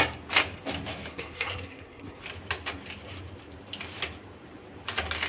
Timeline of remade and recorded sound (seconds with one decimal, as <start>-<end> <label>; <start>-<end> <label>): 0.0-1.1 recorded; 1.1-2.2 remade; 2.2-5.3 recorded

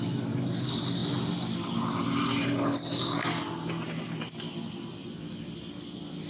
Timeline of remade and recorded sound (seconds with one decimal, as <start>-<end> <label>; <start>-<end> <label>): 0.0-6.3 recorded